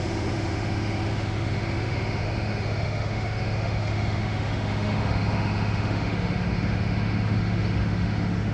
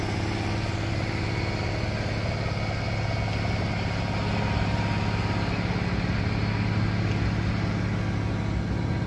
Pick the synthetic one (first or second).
first